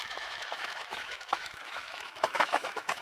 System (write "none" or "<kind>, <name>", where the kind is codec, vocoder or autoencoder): autoencoder, DAC-VAE